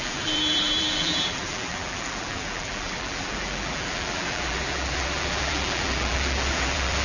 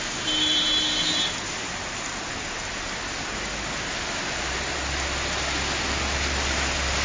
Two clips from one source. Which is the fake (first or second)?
first